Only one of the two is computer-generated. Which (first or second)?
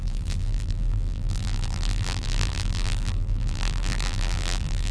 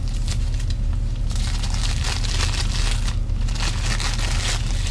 first